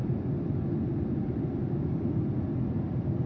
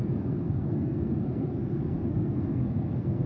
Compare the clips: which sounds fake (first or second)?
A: second